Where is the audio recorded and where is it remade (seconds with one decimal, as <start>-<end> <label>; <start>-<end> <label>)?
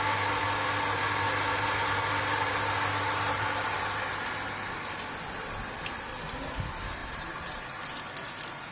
0.0-8.7 recorded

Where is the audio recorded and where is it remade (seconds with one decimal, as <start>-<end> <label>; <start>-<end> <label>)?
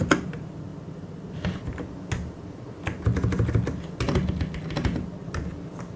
0.0-6.0 recorded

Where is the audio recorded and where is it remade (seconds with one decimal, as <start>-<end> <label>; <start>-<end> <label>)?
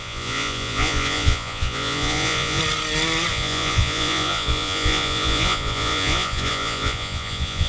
0.0-2.6 remade; 2.6-3.3 recorded; 3.3-7.7 remade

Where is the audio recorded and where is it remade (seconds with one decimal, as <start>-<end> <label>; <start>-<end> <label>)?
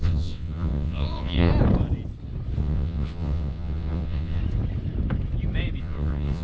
0.0-1.5 remade; 1.5-2.6 recorded; 2.6-4.4 remade; 4.4-5.8 recorded; 5.8-6.4 remade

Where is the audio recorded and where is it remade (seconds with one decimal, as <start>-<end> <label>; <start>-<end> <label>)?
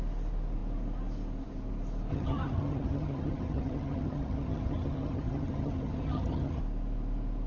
0.0-2.1 recorded; 2.1-6.6 remade; 6.6-7.5 recorded